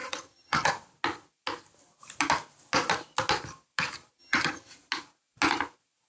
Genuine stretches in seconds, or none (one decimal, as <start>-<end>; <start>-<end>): 0.7-4.2; 4.7-6.1